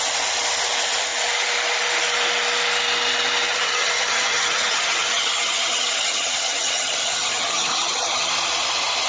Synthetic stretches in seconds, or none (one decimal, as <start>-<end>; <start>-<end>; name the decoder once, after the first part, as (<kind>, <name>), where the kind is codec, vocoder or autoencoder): 3.5-8.3 (vocoder, HiFi-GAN)